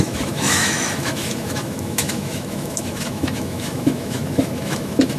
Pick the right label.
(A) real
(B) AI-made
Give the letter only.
B